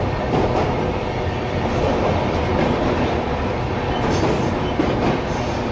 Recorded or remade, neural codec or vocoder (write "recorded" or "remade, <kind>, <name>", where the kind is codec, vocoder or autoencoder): recorded